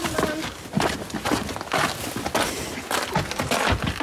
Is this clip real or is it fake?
real